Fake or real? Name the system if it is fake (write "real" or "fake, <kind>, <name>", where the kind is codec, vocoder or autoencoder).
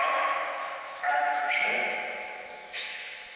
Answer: fake, autoencoder, DAC-VAE